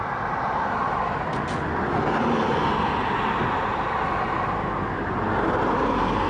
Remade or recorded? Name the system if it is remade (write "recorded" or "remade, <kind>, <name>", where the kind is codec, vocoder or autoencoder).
recorded